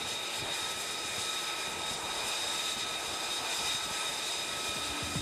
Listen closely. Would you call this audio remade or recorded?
recorded